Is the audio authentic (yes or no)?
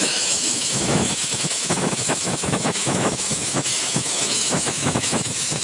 no